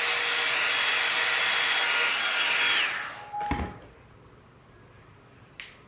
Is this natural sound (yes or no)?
yes